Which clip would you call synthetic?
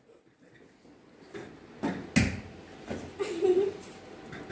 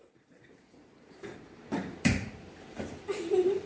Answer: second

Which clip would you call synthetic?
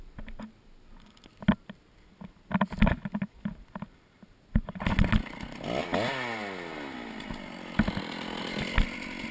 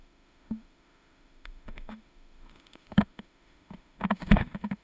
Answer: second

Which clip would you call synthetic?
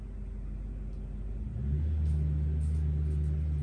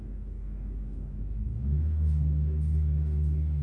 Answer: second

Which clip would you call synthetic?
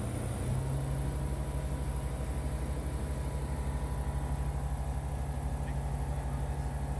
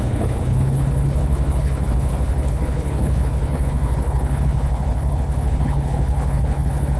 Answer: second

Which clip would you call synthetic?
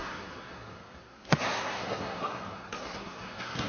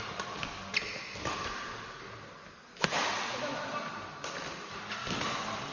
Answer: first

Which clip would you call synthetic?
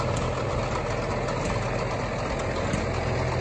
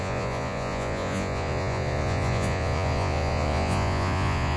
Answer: second